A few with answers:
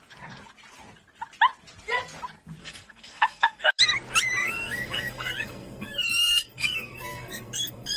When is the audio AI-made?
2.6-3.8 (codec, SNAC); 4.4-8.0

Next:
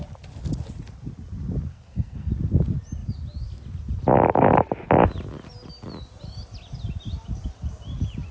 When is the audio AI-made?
1.7-2.3 (codec, SNAC)